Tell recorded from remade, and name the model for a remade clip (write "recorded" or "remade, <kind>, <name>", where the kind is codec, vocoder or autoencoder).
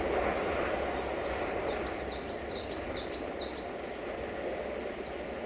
recorded